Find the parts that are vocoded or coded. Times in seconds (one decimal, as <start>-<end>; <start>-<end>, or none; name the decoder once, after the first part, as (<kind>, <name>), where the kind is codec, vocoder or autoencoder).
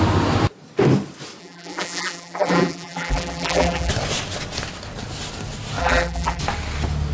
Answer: 1.4-3.9 (vocoder, BigVGAN v2); 5.8-6.4